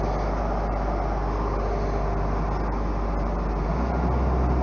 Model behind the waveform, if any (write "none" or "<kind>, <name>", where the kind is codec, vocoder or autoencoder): none